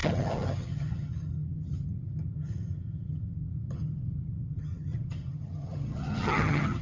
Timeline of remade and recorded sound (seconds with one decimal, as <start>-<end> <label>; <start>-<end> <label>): 0.0-6.8 remade